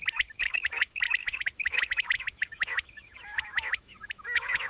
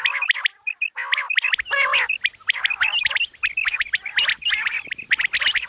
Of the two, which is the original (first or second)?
second